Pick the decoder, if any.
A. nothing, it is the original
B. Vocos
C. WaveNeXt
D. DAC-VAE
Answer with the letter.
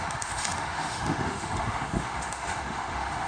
D